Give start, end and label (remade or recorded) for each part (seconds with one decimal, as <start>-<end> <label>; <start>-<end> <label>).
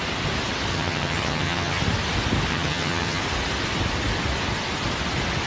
0.0-0.7 recorded; 0.7-1.8 remade; 1.8-2.5 recorded; 2.5-3.2 remade; 3.2-5.5 recorded